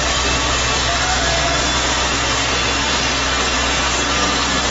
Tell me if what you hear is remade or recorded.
recorded